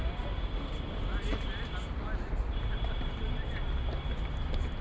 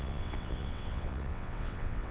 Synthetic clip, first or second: second